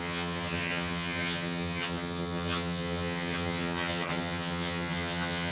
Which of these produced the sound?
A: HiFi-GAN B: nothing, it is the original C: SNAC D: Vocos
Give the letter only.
A